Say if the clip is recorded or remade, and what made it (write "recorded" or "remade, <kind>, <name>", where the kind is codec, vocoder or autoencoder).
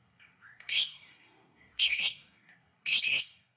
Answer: remade, codec, SNAC